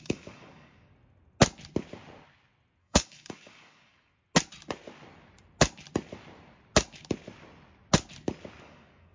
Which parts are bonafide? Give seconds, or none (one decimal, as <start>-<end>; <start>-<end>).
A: 0.9-2.8; 4.1-8.6